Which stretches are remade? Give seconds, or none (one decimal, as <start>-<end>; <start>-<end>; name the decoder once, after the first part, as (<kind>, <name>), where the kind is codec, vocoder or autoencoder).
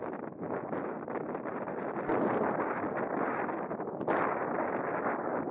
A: none